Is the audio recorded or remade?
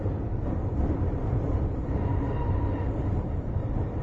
remade